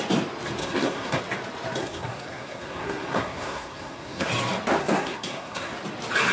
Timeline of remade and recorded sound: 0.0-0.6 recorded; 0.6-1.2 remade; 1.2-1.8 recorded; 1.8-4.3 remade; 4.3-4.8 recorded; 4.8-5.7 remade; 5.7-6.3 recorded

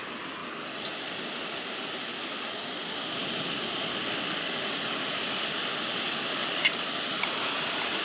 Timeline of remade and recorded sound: 0.0-8.0 recorded

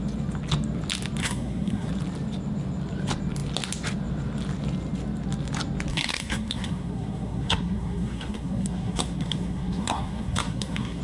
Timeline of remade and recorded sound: 0.0-1.2 recorded; 1.2-1.9 remade; 1.9-5.9 recorded; 5.9-11.0 remade

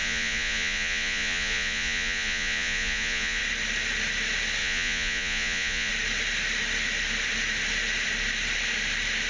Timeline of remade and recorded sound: 0.0-3.4 remade; 3.4-4.6 recorded; 4.6-5.9 remade; 5.9-9.3 recorded